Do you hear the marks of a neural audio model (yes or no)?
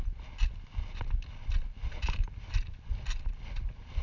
no